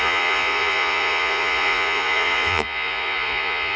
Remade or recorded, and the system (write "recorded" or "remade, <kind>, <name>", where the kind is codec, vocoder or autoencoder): remade, vocoder, Vocos